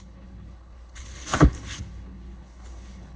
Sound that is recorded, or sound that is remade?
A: remade